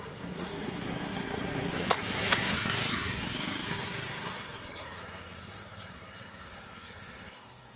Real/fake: fake